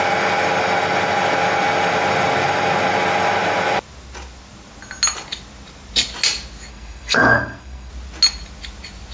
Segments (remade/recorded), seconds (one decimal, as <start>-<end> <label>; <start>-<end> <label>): 0.0-6.7 recorded; 6.7-7.9 remade; 7.9-9.1 recorded